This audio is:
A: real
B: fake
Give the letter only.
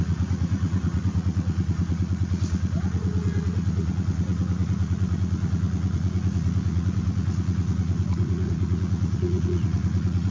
B